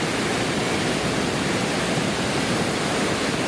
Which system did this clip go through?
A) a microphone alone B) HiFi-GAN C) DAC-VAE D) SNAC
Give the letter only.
A